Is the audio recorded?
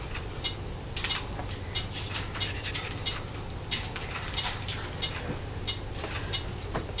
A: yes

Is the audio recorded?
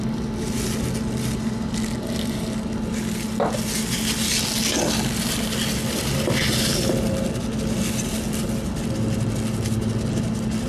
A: yes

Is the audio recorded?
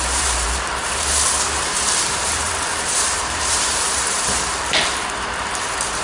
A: no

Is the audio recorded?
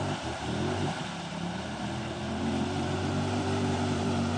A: no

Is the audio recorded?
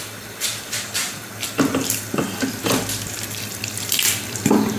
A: no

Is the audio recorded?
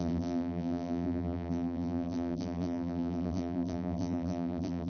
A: no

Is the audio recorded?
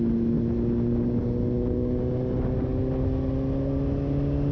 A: yes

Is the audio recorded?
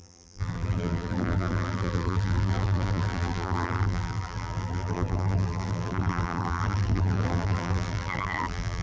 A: no